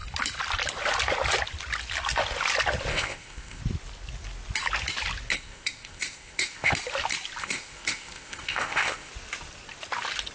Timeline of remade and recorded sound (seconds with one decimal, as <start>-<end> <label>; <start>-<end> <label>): 0.0-2.9 recorded; 2.9-3.6 remade; 3.6-5.3 recorded; 5.3-6.7 remade; 6.7-7.4 recorded; 7.4-9.1 remade; 9.1-10.3 recorded